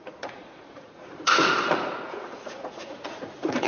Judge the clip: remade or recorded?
remade